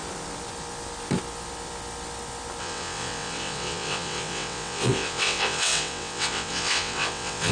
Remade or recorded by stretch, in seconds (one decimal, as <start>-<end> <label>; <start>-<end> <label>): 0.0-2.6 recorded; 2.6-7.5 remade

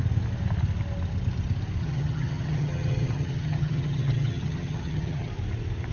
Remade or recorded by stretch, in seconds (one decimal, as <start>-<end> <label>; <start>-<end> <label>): 0.0-1.8 recorded; 1.8-5.3 remade; 5.3-5.9 recorded

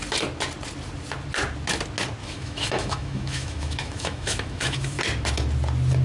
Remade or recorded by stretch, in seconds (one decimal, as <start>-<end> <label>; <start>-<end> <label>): 0.0-2.2 recorded; 2.2-5.0 remade; 5.0-6.0 recorded